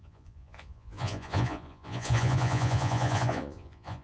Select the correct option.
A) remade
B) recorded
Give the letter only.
A